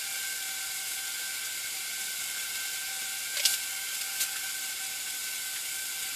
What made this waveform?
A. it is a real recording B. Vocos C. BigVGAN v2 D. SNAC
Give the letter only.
A